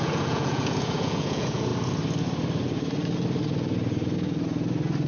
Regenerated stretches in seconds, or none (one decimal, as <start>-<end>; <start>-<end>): 0.0-1.7